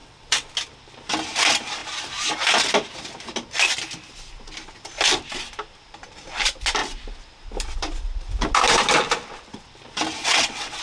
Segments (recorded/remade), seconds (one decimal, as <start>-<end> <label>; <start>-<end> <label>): 0.0-0.5 remade; 0.5-10.2 recorded; 10.2-10.8 remade